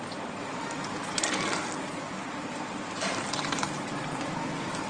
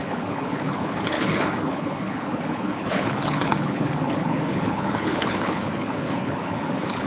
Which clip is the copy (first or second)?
second